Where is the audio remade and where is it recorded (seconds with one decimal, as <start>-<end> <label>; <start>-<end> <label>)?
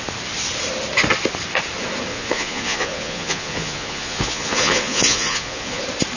0.0-2.1 recorded; 2.1-5.8 remade; 5.8-6.2 recorded